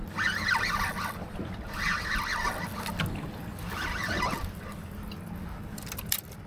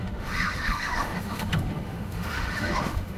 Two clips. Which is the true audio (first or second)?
first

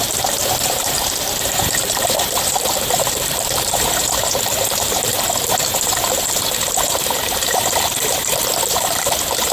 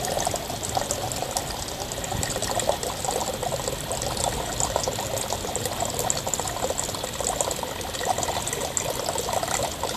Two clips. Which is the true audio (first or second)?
second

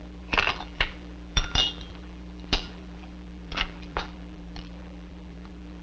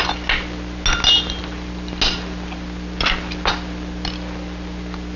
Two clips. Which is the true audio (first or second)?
second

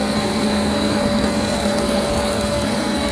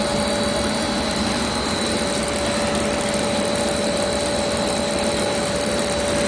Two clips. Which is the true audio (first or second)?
second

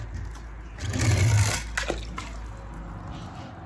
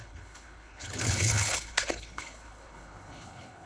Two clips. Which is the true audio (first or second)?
first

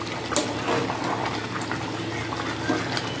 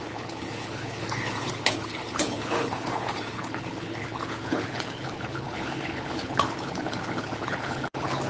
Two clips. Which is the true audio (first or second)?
first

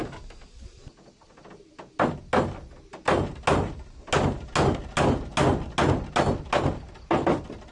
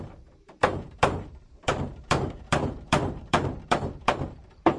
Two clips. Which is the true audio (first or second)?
first